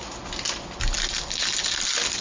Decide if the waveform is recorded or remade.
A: recorded